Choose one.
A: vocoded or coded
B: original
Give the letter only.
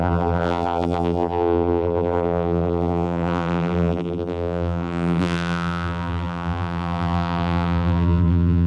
A